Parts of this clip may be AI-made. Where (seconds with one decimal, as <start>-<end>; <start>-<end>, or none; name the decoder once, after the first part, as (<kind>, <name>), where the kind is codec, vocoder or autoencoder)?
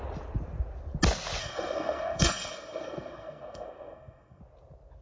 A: 1.4-4.4 (codec, SNAC)